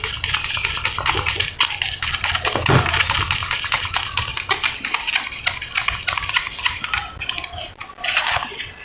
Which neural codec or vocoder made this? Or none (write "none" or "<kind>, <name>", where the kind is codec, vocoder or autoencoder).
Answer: none